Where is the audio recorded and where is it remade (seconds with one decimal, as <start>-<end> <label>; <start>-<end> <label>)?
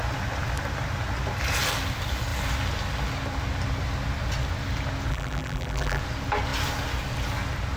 0.0-5.1 recorded; 5.1-6.0 remade; 6.0-7.8 recorded